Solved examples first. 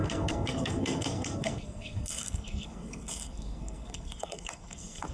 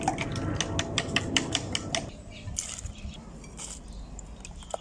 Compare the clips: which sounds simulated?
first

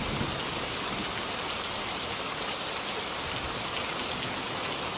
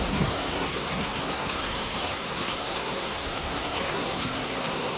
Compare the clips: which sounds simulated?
second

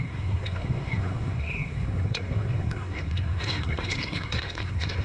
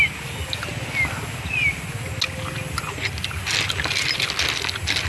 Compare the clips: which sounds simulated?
first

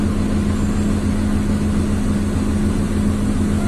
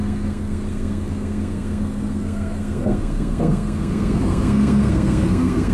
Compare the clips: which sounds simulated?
second